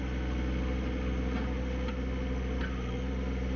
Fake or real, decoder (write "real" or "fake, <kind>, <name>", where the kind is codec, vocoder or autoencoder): real